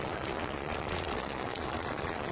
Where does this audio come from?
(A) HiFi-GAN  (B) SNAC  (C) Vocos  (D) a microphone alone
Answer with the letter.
C